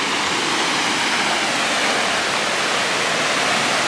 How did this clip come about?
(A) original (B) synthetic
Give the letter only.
A